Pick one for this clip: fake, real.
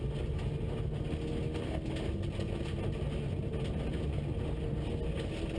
real